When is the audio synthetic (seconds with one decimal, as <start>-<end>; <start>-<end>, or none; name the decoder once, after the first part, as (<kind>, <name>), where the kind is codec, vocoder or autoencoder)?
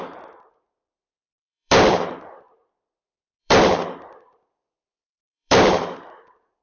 1.4-2.4 (vocoder, BigVGAN v2); 3.4-6.6